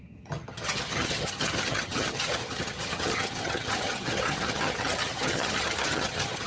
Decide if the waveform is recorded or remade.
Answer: remade